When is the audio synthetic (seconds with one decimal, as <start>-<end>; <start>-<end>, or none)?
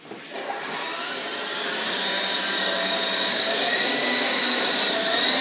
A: 1.5-4.7